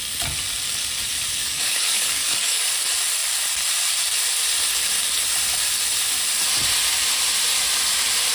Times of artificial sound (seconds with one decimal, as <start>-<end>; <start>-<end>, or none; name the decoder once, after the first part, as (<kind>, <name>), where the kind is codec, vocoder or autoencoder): 1.4-2.7 (codec, DAC)